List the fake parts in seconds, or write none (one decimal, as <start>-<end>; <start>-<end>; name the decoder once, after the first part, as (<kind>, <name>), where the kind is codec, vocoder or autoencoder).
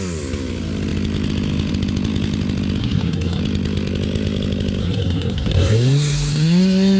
2.8-3.4 (codec, SNAC); 4.8-7.0